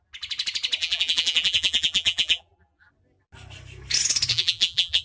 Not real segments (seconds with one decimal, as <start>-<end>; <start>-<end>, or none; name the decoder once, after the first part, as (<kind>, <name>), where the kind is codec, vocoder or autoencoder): 0.8-2.9 (vocoder, BigVGAN v2); 4.3-5.0